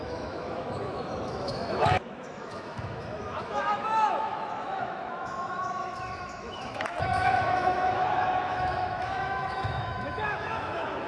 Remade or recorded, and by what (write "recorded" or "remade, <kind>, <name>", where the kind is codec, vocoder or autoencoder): remade, autoencoder, DAC-VAE